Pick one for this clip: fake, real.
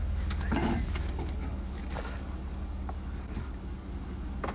fake